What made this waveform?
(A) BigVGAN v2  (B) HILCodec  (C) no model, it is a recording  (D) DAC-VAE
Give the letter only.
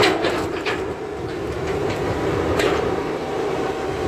A